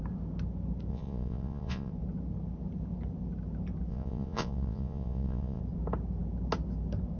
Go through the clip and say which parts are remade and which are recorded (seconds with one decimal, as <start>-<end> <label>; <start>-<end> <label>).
0.0-0.9 recorded; 0.9-1.9 remade; 1.9-3.9 recorded; 3.9-5.6 remade; 5.6-7.2 recorded